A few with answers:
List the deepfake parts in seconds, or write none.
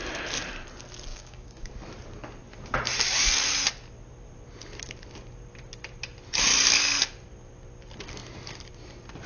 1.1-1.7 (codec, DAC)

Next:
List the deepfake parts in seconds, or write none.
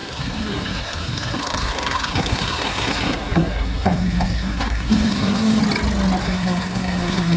0.0-5.6 (codec, SNAC); 6.2-7.4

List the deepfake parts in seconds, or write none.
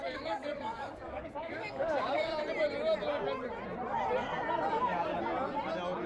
0.0-2.3 (codec, DAC)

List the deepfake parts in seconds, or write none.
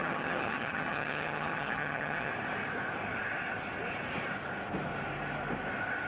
0.0-2.3 (vocoder, HiFi-GAN)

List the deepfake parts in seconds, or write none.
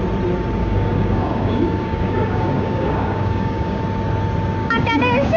0.6-3.8 (codec, DAC); 4.6-5.4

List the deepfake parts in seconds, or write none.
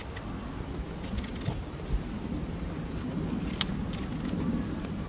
none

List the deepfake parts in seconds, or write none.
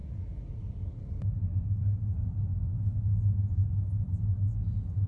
none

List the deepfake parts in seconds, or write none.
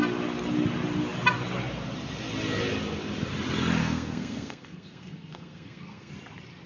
3.8-6.1 (codec, SNAC)